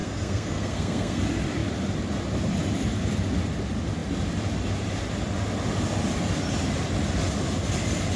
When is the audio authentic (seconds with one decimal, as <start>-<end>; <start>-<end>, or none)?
1.2-8.2